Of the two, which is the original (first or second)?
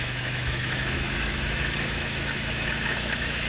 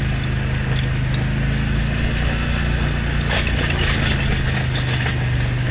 second